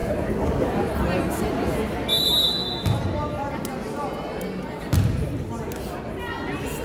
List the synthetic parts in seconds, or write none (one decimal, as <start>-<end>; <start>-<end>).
0.0-0.9